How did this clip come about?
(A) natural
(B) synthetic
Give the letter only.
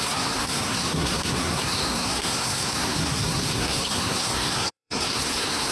B